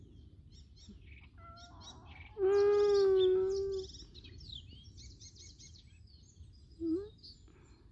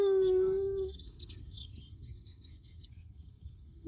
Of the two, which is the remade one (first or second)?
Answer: second